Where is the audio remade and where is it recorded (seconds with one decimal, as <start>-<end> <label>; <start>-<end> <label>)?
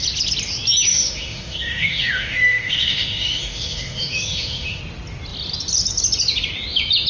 0.0-0.9 recorded; 0.9-4.8 remade; 4.8-7.1 recorded